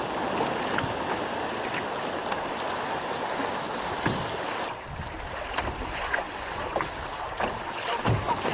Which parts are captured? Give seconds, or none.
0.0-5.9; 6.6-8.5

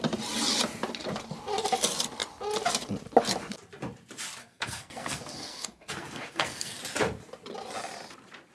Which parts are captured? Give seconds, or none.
0.0-4.4; 6.8-8.5

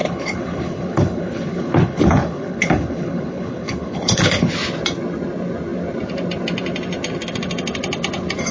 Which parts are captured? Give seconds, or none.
4.5-8.5

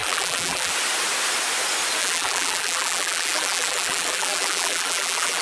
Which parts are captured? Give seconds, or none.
0.7-2.0

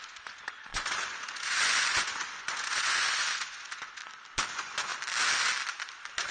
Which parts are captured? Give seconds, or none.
4.0-4.5; 4.9-6.3